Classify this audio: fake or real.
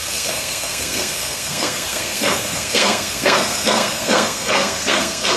fake